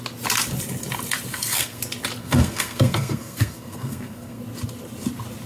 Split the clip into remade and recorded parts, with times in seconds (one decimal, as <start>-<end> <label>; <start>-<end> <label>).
0.0-1.3 recorded; 1.3-1.8 remade; 1.8-2.2 recorded; 2.2-4.4 remade; 4.4-5.5 recorded